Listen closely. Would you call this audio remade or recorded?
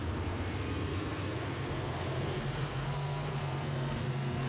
remade